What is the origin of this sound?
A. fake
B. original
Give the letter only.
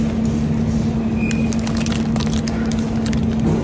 B